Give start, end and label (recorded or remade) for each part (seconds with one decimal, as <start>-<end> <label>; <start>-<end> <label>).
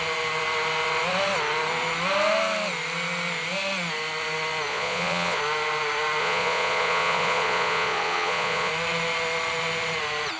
0.0-4.7 recorded; 4.7-5.4 remade; 5.4-6.2 recorded; 6.2-8.7 remade; 8.7-10.4 recorded